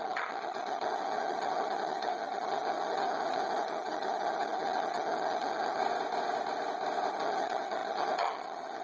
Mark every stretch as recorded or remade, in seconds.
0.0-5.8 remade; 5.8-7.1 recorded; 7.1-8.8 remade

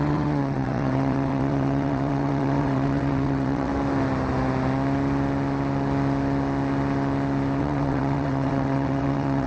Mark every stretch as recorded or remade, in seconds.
0.0-3.7 remade; 3.7-7.6 recorded; 7.6-9.5 remade

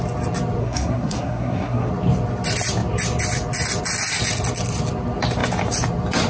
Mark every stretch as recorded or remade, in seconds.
0.0-0.6 recorded; 0.6-1.9 remade; 1.9-6.3 recorded

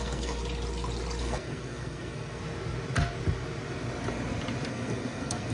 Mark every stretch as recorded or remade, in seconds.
0.0-0.4 remade; 0.4-1.2 recorded; 1.2-2.4 remade; 2.4-4.7 recorded; 4.7-5.5 remade

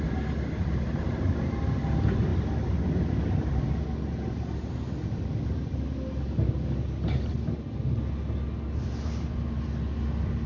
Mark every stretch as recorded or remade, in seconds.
0.0-10.5 recorded